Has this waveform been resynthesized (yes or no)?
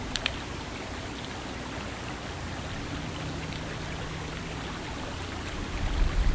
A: no